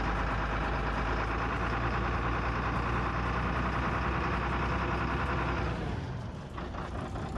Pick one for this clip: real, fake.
real